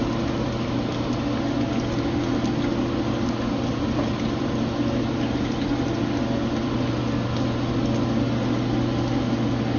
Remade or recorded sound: recorded